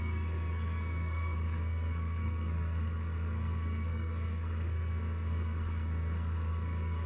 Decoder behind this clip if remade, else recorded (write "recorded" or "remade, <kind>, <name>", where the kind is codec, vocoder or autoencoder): remade, codec, SNAC